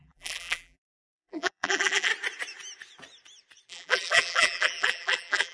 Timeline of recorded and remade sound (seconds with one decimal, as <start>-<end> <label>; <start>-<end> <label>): 0.0-2.1 remade; 2.1-3.7 recorded; 3.7-5.5 remade